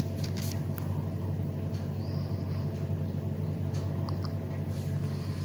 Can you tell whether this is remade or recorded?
recorded